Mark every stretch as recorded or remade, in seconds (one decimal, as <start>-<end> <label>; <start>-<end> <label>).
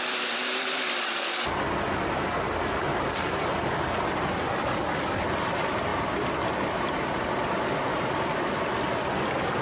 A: 0.0-9.6 recorded